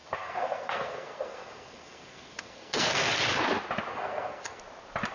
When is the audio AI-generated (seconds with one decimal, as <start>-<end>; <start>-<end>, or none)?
0.0-3.1; 3.9-4.6